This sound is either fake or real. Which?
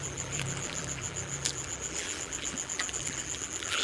fake